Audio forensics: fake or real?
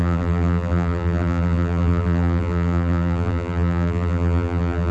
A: fake